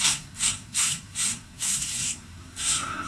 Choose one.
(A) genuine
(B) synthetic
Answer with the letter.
B